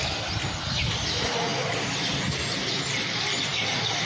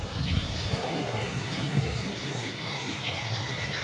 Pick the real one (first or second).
first